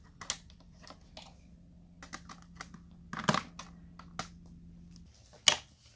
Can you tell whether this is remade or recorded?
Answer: recorded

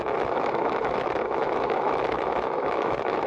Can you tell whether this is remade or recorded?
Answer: remade